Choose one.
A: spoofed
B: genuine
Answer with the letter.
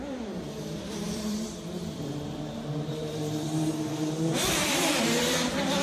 A